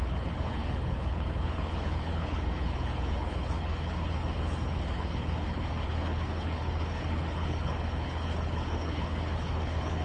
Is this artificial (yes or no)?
yes